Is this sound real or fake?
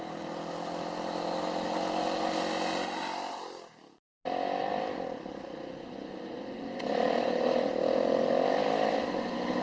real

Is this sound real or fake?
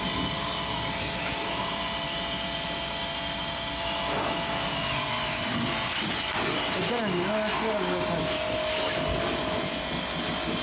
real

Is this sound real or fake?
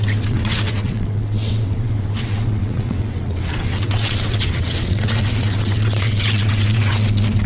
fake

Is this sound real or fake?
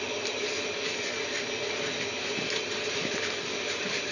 real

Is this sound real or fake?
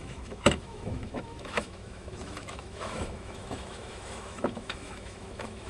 fake